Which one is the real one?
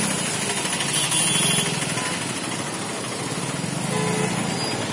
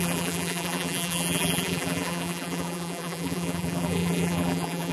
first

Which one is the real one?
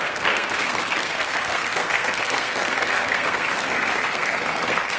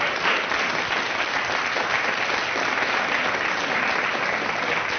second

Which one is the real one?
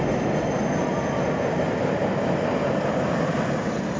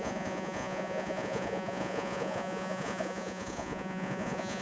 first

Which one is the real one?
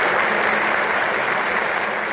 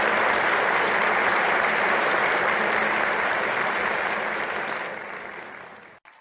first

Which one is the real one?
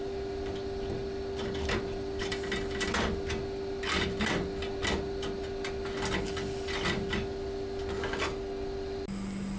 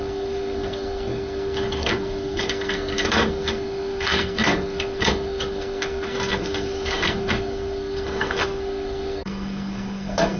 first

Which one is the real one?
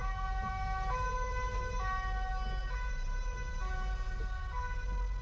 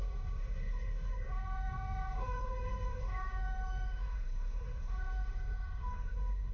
first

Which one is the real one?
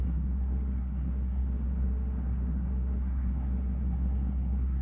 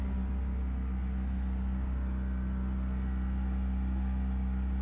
second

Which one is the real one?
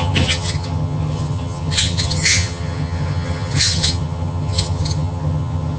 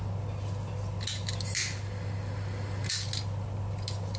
second